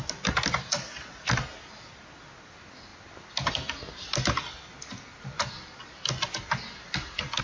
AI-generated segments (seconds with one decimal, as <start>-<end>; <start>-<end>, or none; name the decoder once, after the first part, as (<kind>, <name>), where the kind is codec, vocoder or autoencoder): none